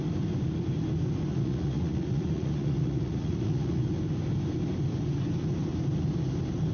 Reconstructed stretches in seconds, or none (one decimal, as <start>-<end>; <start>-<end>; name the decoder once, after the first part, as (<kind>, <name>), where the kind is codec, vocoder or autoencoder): 1.3-3.8 (vocoder, Vocos)